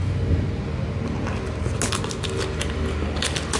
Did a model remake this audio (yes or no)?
no